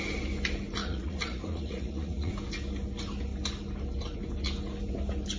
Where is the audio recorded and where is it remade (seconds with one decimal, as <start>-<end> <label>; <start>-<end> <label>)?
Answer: 0.0-0.8 recorded; 0.8-2.3 remade; 2.3-5.4 recorded